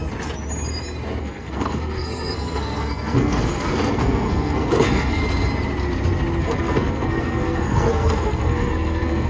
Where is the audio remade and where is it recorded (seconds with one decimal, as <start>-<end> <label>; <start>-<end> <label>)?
0.0-1.2 recorded; 1.2-5.2 remade; 5.2-6.4 recorded; 6.4-9.3 remade